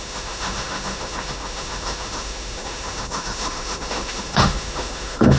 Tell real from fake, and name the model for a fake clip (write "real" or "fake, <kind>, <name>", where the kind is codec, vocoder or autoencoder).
fake, autoencoder, DAC-VAE